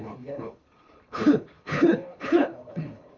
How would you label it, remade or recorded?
remade